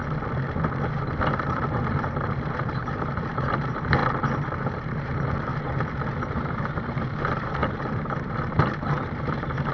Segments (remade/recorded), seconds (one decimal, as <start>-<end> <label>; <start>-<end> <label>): 0.0-1.3 recorded; 1.3-4.0 remade; 4.0-4.6 recorded; 4.6-5.5 remade; 5.5-6.4 recorded; 6.4-9.7 remade